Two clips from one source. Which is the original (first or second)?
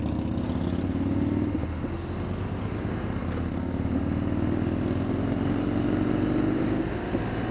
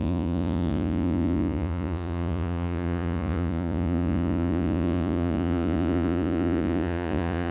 first